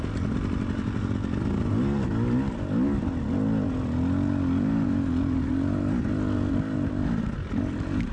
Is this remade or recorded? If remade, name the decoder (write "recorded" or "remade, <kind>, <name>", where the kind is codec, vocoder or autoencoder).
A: recorded